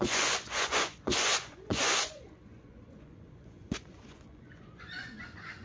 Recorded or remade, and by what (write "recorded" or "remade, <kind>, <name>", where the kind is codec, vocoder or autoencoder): remade, vocoder, Vocos